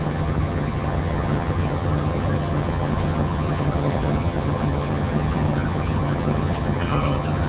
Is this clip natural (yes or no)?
no